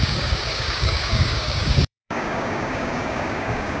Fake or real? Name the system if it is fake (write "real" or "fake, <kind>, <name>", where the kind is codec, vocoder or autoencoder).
fake, codec, DAC